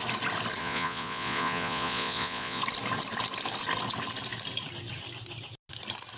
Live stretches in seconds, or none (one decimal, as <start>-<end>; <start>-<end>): 0.0-0.6; 2.6-6.2